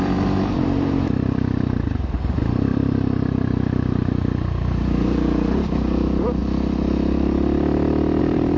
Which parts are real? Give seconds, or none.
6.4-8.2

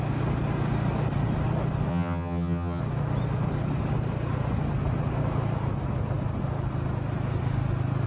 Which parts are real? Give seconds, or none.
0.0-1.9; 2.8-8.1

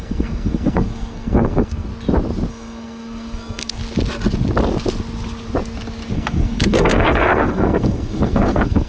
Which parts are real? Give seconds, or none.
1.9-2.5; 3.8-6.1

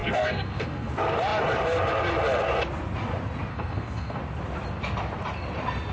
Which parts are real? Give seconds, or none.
0.9-3.5; 4.2-5.9